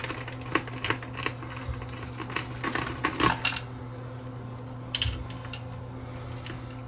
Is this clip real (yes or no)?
yes